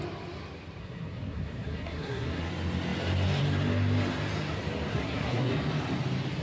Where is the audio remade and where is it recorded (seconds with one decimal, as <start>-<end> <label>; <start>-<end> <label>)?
0.0-0.8 recorded; 0.8-2.5 remade; 2.5-4.9 recorded; 4.9-5.5 remade; 5.5-6.4 recorded